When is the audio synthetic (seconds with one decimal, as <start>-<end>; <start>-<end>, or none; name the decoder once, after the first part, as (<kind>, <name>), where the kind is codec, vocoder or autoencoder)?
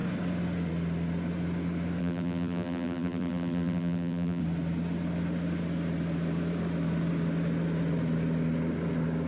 2.0-4.4 (vocoder, BigVGAN v2)